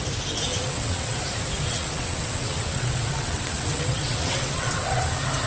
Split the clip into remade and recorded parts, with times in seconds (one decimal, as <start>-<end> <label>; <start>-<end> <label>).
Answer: 0.0-0.5 recorded; 0.5-1.2 remade; 1.2-1.7 recorded; 1.7-5.0 remade; 5.0-5.5 recorded